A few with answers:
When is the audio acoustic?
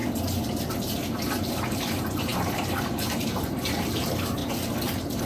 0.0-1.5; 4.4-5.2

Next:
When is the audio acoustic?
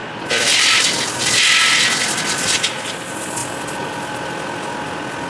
0.0-5.3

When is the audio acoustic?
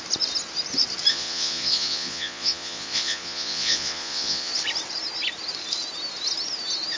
0.0-1.1; 4.5-7.0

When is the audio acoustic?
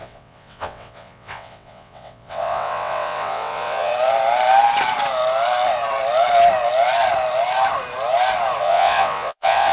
3.9-8.6